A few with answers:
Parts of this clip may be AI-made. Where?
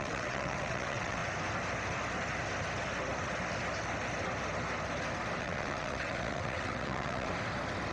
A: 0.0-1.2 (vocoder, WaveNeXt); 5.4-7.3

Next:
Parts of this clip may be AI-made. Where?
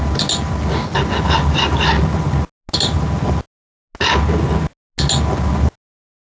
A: none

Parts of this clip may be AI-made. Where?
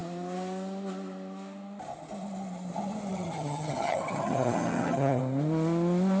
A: 3.1-5.2 (vocoder, HiFi-GAN)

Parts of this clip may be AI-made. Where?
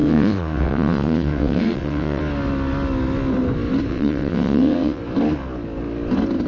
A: 0.0-2.2 (vocoder, WaveNeXt); 3.9-5.0